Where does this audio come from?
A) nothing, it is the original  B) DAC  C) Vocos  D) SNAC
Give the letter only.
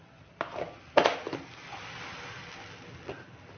A